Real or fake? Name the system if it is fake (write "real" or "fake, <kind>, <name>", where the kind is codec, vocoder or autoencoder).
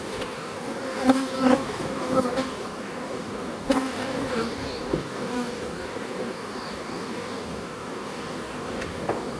fake, codec, DAC